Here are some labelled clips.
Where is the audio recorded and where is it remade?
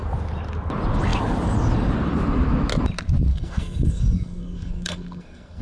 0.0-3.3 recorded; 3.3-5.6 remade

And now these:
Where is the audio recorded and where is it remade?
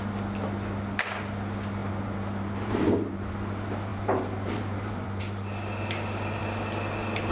0.0-1.8 recorded; 1.8-3.3 remade; 3.3-3.9 recorded; 3.9-5.2 remade; 5.2-7.3 recorded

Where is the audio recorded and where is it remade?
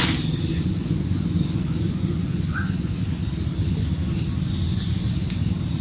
0.0-0.5 recorded; 0.5-2.9 remade; 2.9-5.8 recorded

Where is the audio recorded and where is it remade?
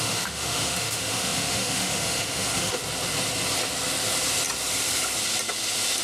0.0-2.8 remade; 2.8-6.0 recorded